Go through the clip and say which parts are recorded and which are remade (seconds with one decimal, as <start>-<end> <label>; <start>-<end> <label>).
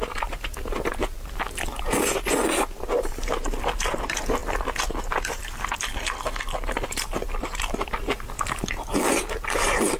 0.0-10.0 recorded